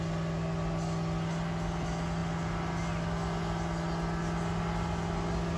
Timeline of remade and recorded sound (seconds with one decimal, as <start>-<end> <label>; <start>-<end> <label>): 0.0-5.6 recorded